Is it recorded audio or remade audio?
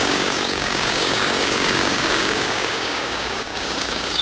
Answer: remade